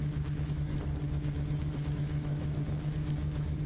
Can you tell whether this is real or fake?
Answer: fake